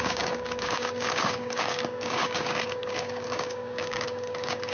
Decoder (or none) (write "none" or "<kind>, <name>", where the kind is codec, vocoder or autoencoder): codec, DAC